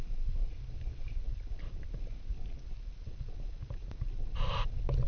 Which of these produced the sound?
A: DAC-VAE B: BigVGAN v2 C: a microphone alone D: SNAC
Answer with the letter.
C